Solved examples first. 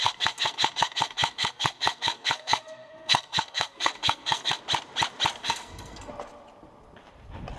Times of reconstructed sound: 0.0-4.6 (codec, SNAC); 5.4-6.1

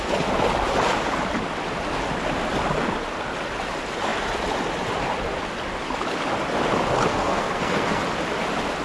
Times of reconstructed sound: 7.1-8.0 (codec, SNAC)

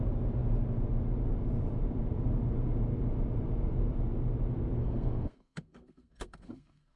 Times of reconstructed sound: 4.8-7.0 (codec, SNAC)

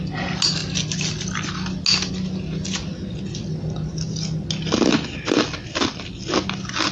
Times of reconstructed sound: none

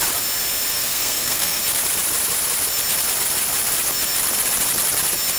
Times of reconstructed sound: 0.7-1.6 (codec, SNAC)